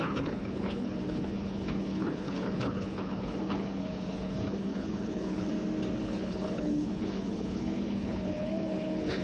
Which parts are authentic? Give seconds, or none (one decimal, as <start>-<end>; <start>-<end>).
5.5-6.0